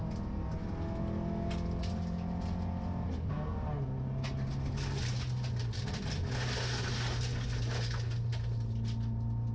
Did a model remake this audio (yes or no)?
no